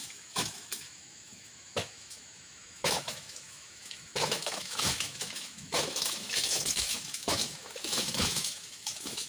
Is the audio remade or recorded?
remade